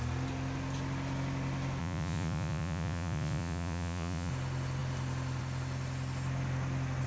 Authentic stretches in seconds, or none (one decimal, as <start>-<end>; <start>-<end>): 0.0-1.8; 4.3-7.1